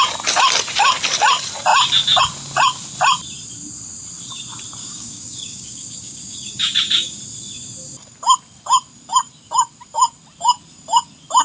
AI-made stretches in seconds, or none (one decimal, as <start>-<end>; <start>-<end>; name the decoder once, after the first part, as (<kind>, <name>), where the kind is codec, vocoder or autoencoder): 4.8-7.2 (codec, DAC)